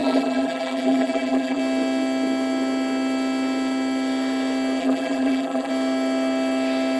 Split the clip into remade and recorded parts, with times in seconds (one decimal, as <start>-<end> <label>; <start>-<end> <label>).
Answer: 0.0-1.6 remade; 1.6-4.8 recorded; 4.8-5.7 remade; 5.7-7.0 recorded